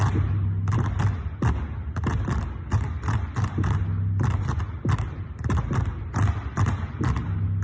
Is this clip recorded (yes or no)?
yes